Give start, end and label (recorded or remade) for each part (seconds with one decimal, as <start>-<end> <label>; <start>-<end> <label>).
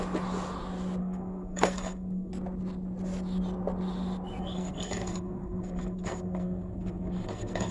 0.0-1.0 recorded; 1.0-2.3 remade; 2.3-4.4 recorded; 4.4-7.7 remade